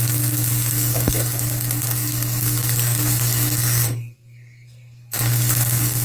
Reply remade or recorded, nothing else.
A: remade